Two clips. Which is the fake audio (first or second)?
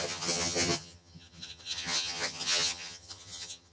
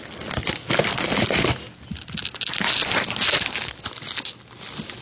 first